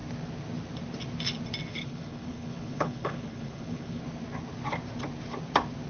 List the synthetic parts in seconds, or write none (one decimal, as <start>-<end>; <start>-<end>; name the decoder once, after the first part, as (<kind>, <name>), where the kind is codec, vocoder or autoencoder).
1.7-4.0 (codec, HILCodec)